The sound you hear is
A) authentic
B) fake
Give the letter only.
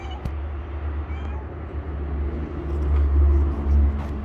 A